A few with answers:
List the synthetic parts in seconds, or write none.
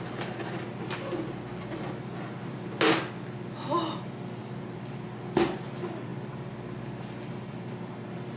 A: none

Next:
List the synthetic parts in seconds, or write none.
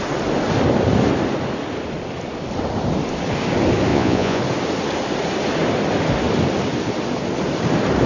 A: 3.9-4.4 (vocoder, Vocos)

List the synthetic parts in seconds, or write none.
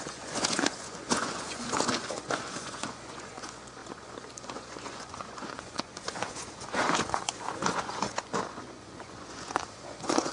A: 0.0-10.3 (vocoder, Vocos)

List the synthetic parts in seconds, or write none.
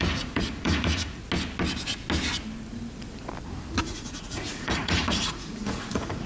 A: 0.0-1.2 (vocoder, Vocos); 3.8-6.3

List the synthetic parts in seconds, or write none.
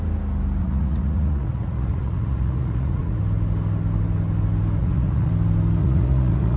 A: 0.6-3.2 (vocoder, Vocos); 4.8-5.3; 5.8-6.6